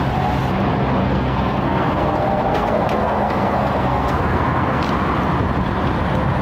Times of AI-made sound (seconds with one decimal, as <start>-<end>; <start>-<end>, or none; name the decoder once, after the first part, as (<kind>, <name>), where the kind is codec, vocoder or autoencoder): 1.0-4.8 (codec, SNAC)